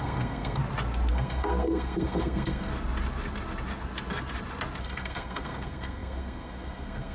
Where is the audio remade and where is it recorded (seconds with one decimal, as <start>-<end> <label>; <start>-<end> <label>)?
0.0-0.6 remade; 0.6-1.1 recorded; 1.1-2.7 remade; 2.7-4.8 recorded; 4.8-7.1 remade